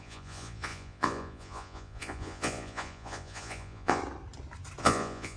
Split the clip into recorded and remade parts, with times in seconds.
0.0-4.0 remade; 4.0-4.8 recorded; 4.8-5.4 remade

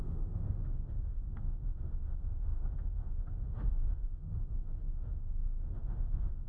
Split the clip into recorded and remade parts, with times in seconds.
0.0-6.5 remade

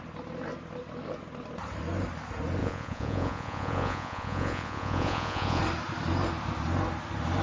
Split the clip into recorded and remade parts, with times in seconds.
0.0-2.6 recorded; 2.6-5.6 remade; 5.6-7.4 recorded